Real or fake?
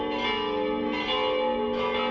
real